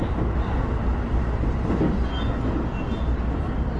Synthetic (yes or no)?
no